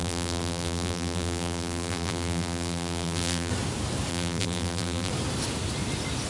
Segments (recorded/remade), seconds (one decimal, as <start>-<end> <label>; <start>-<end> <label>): 0.0-3.5 remade; 3.5-4.1 recorded; 4.1-5.1 remade; 5.1-6.3 recorded